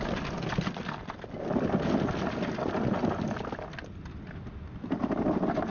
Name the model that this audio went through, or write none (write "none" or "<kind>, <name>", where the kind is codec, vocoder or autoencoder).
none